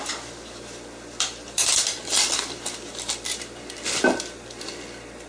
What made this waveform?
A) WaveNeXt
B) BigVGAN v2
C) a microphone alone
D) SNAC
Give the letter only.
C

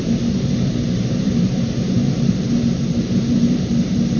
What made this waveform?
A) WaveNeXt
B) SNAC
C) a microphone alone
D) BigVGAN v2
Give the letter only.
D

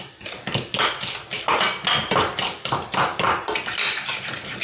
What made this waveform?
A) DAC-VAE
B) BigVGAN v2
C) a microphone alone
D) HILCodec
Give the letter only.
C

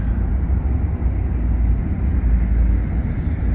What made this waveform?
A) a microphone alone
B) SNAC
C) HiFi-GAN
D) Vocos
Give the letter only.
A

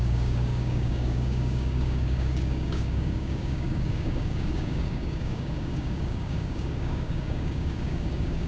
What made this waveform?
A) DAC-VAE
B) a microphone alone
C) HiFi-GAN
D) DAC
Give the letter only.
D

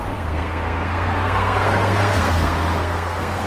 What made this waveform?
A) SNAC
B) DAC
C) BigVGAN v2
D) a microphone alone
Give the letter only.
A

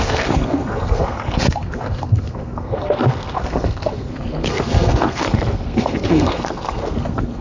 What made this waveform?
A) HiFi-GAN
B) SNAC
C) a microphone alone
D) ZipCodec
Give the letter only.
B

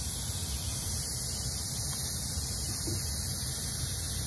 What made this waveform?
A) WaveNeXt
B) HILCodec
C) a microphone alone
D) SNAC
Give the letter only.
C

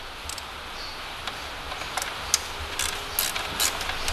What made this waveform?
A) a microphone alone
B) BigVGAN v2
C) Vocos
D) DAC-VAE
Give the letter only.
A